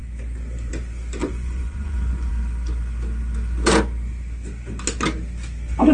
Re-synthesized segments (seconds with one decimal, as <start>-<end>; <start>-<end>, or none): 1.2-2.3